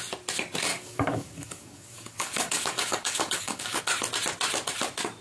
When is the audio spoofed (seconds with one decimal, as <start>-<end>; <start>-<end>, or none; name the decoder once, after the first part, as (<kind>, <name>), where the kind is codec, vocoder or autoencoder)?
0.7-3.8 (codec, DAC)